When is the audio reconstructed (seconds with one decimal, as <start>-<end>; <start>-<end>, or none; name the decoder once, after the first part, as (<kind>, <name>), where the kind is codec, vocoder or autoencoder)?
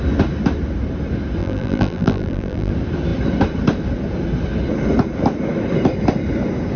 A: 1.4-2.7 (vocoder, BigVGAN v2)